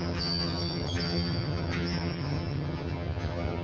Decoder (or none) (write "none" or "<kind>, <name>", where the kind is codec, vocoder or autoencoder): vocoder, HiFi-GAN